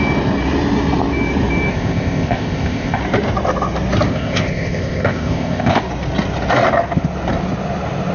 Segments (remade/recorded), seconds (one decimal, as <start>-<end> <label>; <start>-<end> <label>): 0.0-1.7 recorded; 1.7-3.0 remade; 3.0-4.1 recorded; 4.1-5.8 remade; 5.8-8.1 recorded